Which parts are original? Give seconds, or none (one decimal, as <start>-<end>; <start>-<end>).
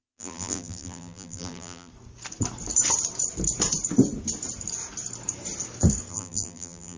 1.9-6.1